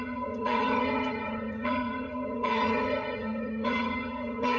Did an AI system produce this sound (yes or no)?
yes